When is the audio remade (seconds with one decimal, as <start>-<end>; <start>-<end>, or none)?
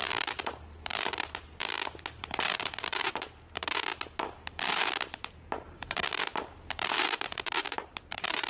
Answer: 0.0-1.6; 2.2-3.9; 4.6-8.5